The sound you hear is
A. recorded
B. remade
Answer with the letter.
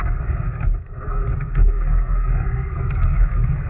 B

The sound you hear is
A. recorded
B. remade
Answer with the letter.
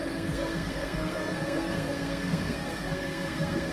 B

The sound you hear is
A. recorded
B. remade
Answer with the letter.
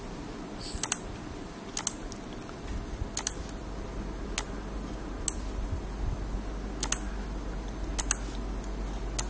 A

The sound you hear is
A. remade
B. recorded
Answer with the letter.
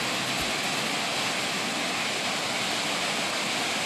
B